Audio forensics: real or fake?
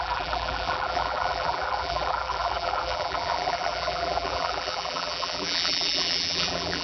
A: fake